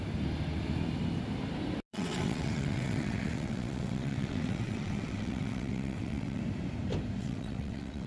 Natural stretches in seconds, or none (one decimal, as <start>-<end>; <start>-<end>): 0.0-1.9; 6.4-7.2